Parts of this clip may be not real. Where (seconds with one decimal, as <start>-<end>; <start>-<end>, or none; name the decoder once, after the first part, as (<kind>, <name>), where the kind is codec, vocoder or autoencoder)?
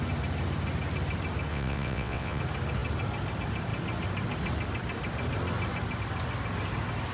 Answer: 1.5-2.4 (vocoder, WaveNeXt)